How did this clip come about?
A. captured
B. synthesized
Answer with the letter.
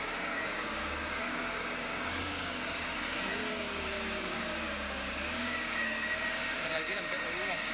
B